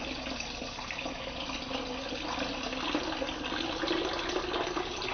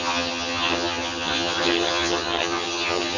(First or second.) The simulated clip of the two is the second